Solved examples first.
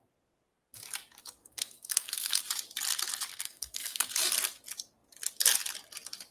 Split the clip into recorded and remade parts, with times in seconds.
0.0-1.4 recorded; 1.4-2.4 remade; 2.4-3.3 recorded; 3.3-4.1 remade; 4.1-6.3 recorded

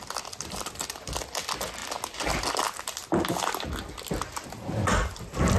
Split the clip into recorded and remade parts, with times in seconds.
0.0-5.6 recorded